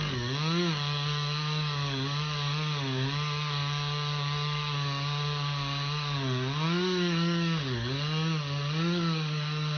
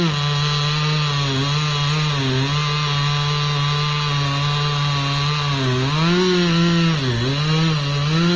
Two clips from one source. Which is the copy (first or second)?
first